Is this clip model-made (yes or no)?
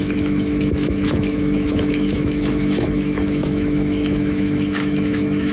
yes